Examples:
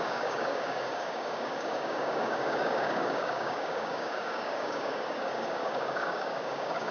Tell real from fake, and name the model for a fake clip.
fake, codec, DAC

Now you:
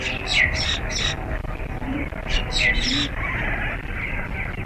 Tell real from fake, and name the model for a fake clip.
real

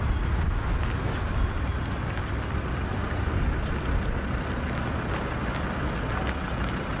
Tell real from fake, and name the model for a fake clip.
real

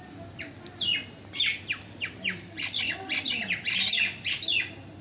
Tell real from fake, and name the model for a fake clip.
real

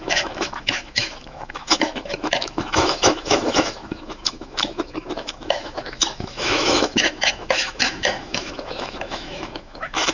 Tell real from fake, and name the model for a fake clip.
fake, autoencoder, DAC-VAE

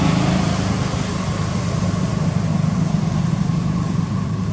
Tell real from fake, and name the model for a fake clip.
real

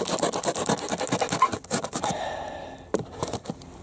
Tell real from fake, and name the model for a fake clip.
real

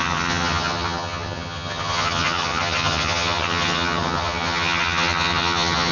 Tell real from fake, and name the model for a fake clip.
fake, vocoder, HiFi-GAN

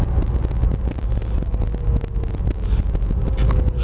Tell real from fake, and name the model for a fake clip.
real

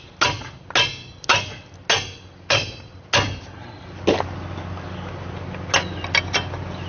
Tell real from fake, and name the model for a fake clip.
real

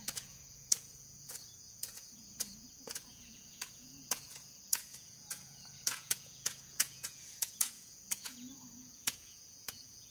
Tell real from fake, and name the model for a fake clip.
fake, vocoder, Vocos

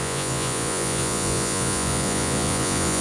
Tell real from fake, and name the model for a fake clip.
fake, vocoder, Vocos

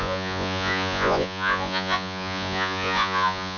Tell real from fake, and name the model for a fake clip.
fake, vocoder, Vocos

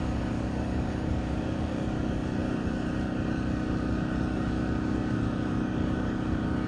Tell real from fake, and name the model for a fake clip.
fake, codec, DAC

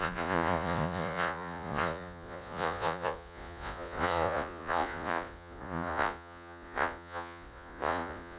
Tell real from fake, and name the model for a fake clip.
fake, vocoder, Vocos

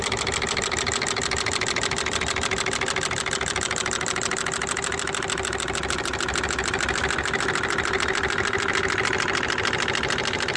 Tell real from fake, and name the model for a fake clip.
real